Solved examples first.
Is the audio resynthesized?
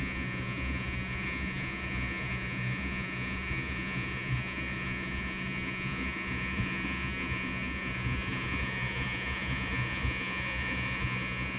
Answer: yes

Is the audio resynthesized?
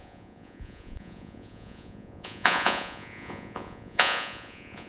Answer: yes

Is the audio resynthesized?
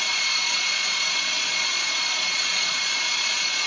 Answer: yes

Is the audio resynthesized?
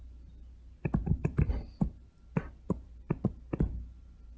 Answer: no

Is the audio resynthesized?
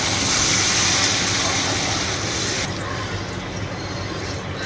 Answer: no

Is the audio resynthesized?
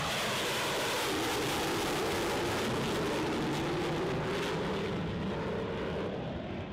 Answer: no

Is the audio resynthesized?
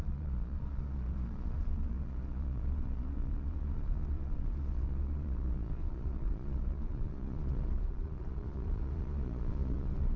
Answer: yes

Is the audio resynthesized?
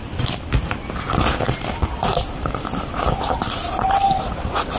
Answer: no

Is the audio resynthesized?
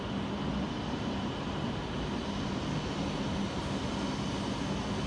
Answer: no